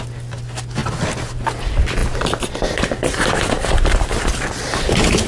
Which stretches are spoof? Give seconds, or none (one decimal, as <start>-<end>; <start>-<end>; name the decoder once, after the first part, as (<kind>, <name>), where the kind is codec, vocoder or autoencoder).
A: none